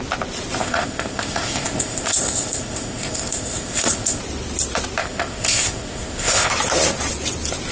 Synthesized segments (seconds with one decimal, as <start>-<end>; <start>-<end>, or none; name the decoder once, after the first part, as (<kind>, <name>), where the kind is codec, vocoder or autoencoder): 0.6-4.2 (codec, ZipCodec); 5.0-6.5